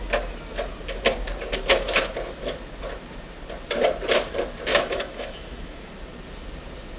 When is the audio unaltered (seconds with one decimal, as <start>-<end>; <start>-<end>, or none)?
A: 0.0-4.7; 5.9-7.0